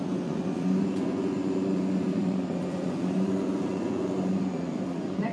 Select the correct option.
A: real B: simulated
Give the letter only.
B